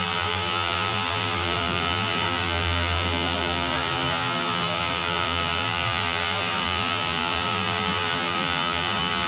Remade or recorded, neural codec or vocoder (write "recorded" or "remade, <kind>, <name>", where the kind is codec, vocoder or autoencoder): remade, vocoder, BigVGAN v2